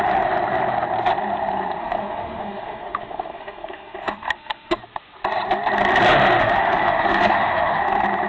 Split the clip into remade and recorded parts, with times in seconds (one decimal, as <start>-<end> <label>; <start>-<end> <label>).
0.0-1.8 recorded; 1.8-4.8 remade; 4.8-6.4 recorded; 6.4-7.8 remade; 7.8-8.3 recorded